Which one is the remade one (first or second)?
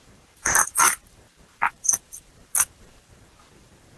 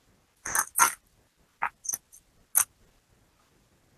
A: first